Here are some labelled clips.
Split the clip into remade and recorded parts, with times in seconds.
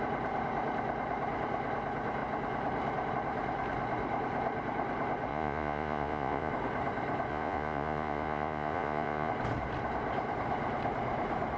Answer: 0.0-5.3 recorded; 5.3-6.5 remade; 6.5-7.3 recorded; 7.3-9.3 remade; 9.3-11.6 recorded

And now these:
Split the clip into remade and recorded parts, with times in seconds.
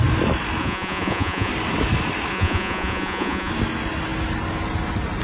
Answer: 0.0-0.6 recorded; 0.6-1.5 remade; 1.5-2.3 recorded; 2.3-3.5 remade; 3.5-5.2 recorded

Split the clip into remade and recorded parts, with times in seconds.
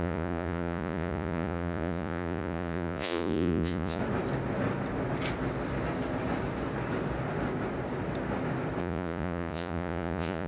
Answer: 0.0-4.0 remade; 4.0-8.8 recorded; 8.8-10.5 remade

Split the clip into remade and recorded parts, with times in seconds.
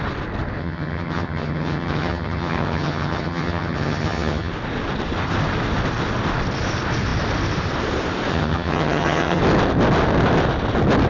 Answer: 0.0-0.6 recorded; 0.6-4.5 remade; 4.5-8.3 recorded; 8.3-9.4 remade; 9.4-11.1 recorded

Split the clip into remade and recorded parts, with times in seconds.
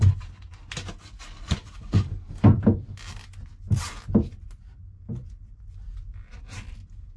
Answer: 0.0-1.6 recorded; 1.6-2.4 remade; 2.4-7.2 recorded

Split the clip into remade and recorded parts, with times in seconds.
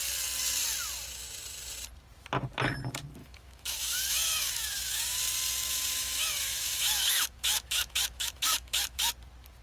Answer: 0.0-3.2 recorded; 3.2-5.2 remade; 5.2-5.7 recorded; 5.7-9.1 remade; 9.1-9.6 recorded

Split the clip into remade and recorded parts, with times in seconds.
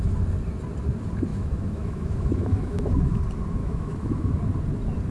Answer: 0.0-1.3 recorded; 1.3-3.2 remade; 3.2-3.6 recorded; 3.6-4.4 remade; 4.4-5.1 recorded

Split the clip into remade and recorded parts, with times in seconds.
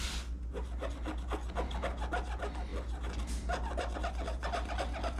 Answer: 0.0-5.2 recorded